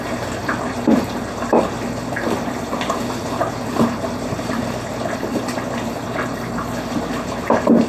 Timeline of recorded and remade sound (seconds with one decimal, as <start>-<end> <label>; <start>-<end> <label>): 0.0-0.4 recorded; 0.4-3.0 remade; 3.0-3.4 recorded; 3.4-6.3 remade; 6.3-7.9 recorded